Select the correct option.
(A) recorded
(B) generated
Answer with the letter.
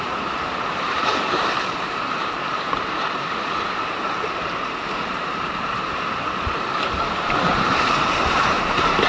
B